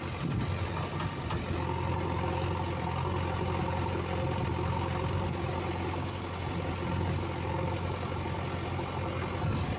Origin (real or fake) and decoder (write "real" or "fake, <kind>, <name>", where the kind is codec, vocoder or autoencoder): real